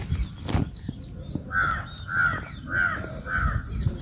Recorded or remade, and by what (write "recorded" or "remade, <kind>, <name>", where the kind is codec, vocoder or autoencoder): recorded